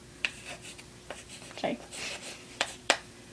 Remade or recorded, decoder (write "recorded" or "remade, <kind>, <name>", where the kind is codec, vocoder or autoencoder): remade, vocoder, BigVGAN v2